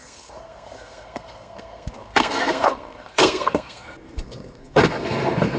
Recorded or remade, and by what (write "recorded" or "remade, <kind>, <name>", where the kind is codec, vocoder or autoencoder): remade, codec, SNAC